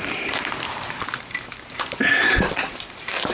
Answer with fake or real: fake